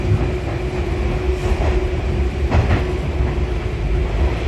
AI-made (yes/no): no